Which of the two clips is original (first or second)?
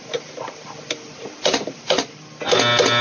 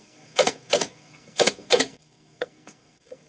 first